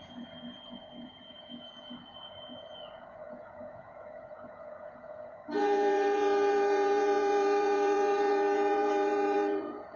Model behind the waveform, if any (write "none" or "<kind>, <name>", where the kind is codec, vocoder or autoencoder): vocoder, Vocos